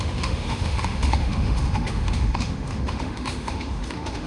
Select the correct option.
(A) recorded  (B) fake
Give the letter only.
B